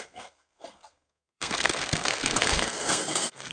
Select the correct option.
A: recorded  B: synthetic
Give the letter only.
B